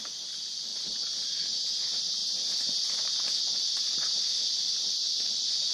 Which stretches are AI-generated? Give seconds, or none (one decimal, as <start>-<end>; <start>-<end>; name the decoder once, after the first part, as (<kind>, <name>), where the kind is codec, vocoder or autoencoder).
none